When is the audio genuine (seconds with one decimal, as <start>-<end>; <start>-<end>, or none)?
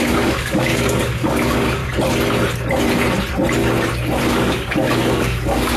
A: 1.8-4.3